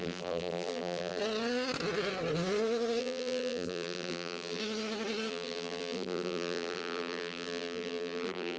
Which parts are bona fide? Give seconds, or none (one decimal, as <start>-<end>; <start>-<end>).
1.2-3.0; 4.6-5.3